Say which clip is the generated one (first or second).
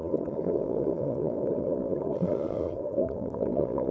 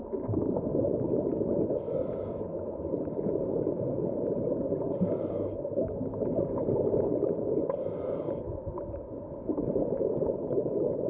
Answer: first